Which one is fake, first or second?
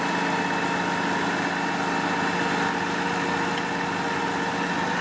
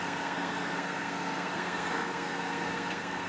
second